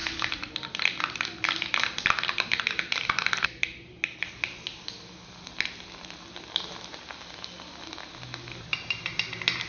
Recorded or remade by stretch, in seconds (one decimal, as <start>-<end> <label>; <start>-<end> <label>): 0.0-9.7 recorded